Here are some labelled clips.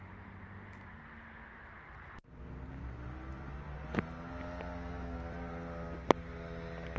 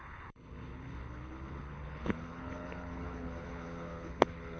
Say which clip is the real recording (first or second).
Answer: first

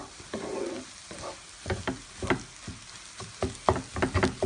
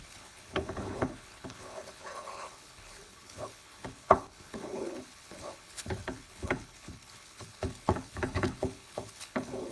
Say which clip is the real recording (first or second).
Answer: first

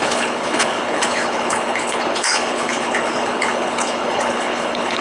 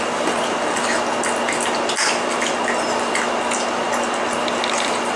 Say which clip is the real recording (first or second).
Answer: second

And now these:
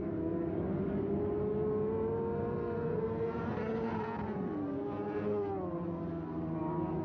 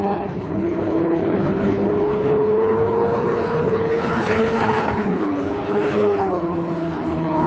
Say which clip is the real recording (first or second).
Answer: first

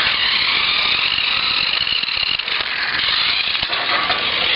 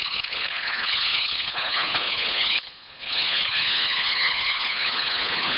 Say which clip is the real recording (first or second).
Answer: first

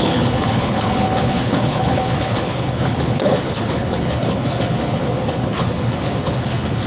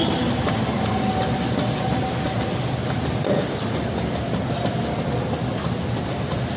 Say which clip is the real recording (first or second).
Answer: second